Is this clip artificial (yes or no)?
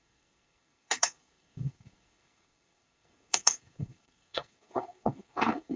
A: yes